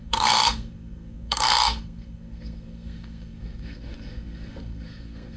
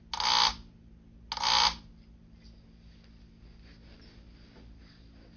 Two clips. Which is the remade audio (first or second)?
first